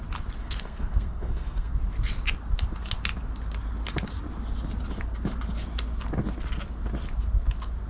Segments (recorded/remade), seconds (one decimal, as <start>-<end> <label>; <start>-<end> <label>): 0.0-0.4 recorded; 0.4-1.7 remade; 1.7-7.9 recorded